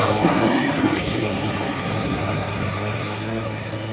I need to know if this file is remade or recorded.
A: remade